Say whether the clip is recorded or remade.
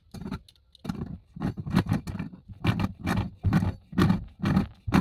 recorded